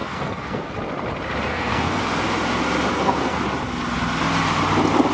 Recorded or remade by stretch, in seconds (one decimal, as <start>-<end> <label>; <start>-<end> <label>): 0.0-0.7 remade; 0.7-1.5 recorded; 1.5-2.0 remade; 2.0-2.9 recorded; 2.9-3.4 remade; 3.4-5.1 recorded